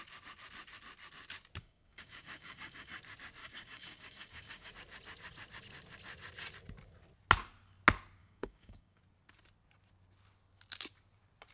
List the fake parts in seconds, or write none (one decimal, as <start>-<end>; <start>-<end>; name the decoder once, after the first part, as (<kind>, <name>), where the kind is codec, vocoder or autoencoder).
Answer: 1.6-3.0 (codec, DAC); 3.4-4.7; 8.2-9.0